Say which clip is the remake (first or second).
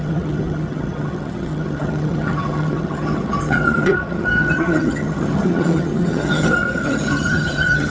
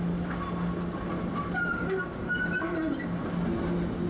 first